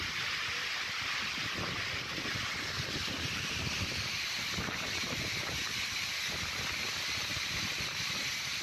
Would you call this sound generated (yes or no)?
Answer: no